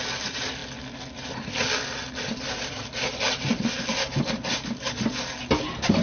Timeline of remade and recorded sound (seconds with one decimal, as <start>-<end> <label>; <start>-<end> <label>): 0.0-6.0 recorded